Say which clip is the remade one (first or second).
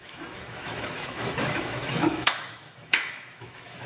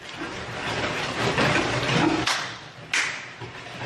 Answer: first